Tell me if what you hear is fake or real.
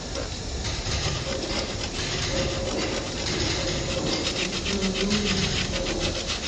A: real